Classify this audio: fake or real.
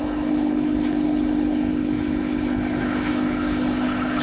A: fake